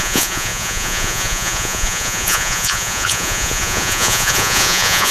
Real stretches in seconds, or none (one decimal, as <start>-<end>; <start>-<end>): none